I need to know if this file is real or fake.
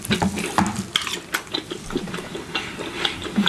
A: real